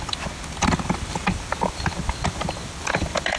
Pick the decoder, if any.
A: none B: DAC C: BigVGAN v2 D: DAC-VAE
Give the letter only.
C